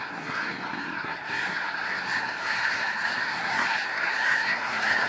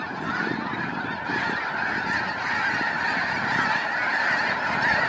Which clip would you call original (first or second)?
second